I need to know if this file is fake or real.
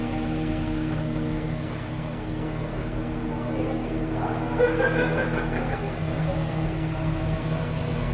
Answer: fake